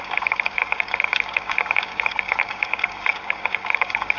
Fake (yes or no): yes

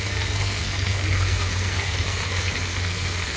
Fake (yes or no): yes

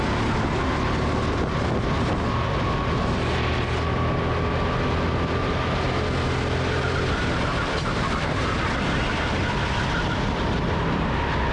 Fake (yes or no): no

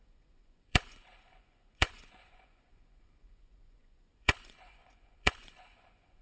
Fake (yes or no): yes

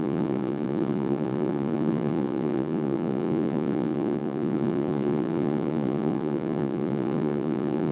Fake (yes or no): yes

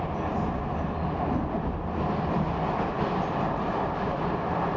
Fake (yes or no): no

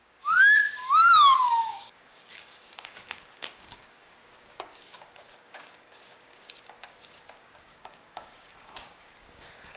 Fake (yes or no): yes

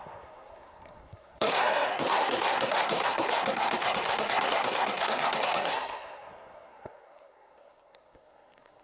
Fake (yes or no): yes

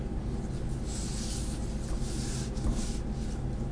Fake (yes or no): no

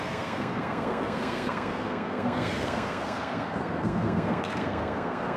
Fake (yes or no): yes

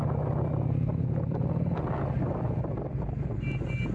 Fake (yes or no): no